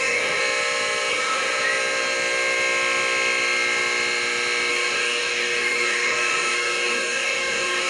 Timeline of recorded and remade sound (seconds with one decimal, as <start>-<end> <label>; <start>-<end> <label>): 0.0-0.4 remade; 0.4-1.1 recorded; 1.1-1.5 remade; 1.5-4.7 recorded; 4.7-7.9 remade